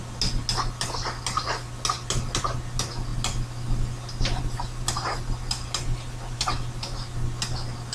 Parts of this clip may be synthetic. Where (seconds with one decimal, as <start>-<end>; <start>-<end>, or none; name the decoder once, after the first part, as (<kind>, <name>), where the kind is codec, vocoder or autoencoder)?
none